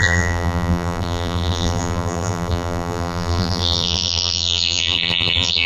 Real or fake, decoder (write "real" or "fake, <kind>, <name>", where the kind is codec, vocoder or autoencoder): fake, vocoder, BigVGAN v2